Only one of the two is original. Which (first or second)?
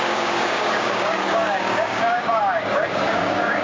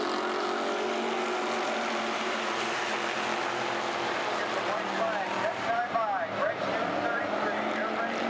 second